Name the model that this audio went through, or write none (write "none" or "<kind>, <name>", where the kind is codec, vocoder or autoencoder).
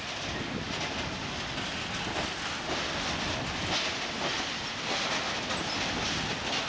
none